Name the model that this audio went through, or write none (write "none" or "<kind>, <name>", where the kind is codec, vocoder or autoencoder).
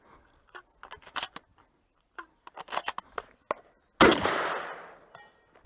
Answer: none